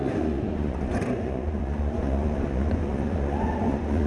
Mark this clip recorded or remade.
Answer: remade